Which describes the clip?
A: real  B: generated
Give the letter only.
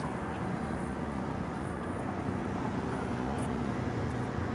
B